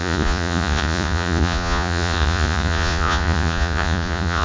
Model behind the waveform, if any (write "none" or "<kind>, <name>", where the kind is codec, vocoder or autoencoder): vocoder, Vocos